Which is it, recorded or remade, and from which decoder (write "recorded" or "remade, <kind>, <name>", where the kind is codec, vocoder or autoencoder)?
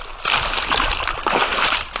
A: recorded